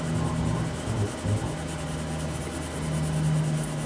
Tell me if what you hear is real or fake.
real